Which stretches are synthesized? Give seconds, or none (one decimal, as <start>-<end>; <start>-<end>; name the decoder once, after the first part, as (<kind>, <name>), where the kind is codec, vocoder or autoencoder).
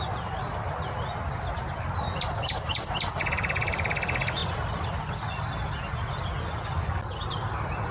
none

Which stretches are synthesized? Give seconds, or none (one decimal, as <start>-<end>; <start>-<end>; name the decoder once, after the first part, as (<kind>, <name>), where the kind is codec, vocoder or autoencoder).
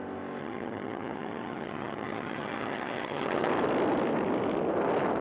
0.4-3.5 (vocoder, HiFi-GAN)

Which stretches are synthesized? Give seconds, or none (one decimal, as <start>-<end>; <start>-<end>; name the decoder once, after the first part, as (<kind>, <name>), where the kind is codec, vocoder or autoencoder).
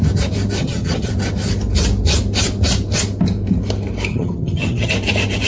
0.6-1.1 (vocoder, HiFi-GAN); 4.1-4.9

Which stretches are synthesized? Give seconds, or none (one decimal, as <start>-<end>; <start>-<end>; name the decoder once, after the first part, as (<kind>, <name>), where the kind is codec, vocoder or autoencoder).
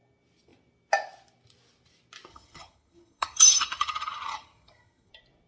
2.3-5.1 (vocoder, HiFi-GAN)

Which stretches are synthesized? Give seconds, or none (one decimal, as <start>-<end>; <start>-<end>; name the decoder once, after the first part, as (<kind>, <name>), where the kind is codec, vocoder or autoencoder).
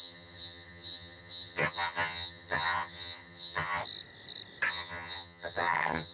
0.0-3.8 (vocoder, HiFi-GAN); 4.7-6.1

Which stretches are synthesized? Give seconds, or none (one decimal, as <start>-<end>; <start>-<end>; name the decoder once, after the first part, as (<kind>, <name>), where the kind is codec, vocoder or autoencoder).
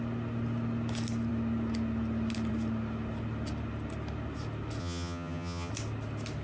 4.8-5.7 (vocoder, HiFi-GAN)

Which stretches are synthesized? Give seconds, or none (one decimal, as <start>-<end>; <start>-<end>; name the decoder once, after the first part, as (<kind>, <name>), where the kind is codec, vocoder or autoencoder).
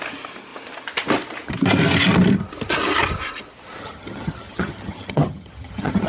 3.8-6.1 (vocoder, HiFi-GAN)